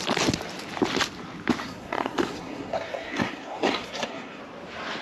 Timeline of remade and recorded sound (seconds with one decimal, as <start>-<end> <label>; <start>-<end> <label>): 0.0-1.6 recorded; 1.6-4.4 remade; 4.4-5.0 recorded

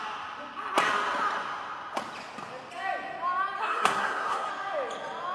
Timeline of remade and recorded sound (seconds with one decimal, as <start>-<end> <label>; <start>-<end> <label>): 0.0-3.6 recorded; 3.6-4.5 remade; 4.5-5.3 recorded

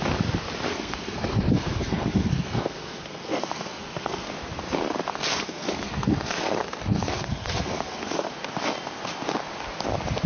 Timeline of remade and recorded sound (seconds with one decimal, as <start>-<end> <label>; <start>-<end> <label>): 0.0-0.7 recorded; 0.7-4.3 remade; 4.3-5.1 recorded; 5.1-8.3 remade; 8.3-10.3 recorded

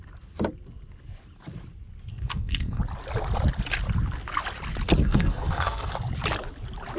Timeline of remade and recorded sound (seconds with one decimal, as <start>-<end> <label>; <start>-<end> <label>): 0.0-2.1 recorded; 2.1-2.8 remade; 2.8-5.0 recorded; 5.0-5.9 remade; 5.9-7.0 recorded

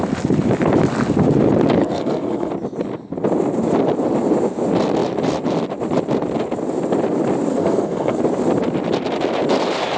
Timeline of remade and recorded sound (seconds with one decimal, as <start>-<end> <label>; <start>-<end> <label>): 0.0-1.8 recorded; 1.8-2.5 remade; 2.5-7.5 recorded; 7.5-8.2 remade; 8.2-10.0 recorded

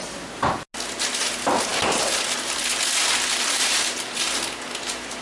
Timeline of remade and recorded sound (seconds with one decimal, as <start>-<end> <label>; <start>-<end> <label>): 0.0-5.2 recorded

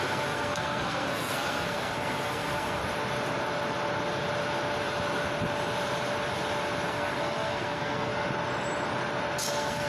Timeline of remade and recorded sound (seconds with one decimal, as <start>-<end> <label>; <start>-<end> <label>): 0.0-2.8 remade; 2.8-6.9 recorded; 6.9-8.1 remade; 8.1-9.5 recorded; 9.5-9.9 remade